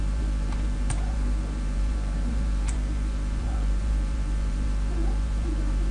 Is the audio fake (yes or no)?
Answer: yes